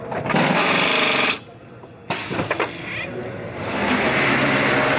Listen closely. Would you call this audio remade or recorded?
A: recorded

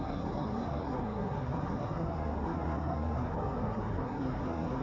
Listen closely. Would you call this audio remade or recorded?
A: remade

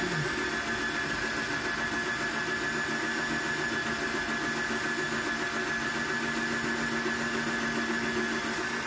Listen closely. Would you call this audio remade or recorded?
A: recorded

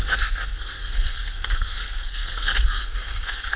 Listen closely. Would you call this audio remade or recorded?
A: remade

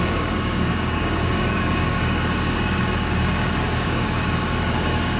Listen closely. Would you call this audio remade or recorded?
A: remade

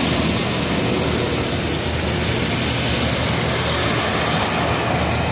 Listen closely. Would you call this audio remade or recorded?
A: recorded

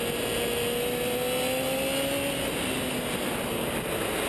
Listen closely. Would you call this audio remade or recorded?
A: recorded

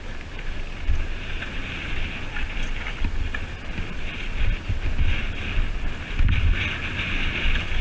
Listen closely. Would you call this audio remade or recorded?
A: recorded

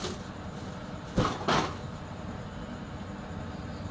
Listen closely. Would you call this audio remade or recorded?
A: recorded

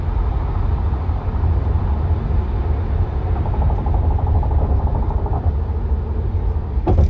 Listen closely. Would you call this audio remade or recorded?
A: recorded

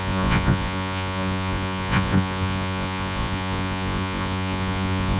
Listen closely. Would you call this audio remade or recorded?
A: remade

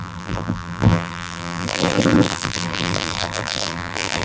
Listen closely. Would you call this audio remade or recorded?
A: remade